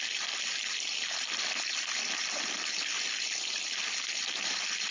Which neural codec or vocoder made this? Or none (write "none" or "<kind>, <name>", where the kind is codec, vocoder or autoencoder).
none